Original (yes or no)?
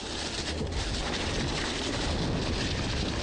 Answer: yes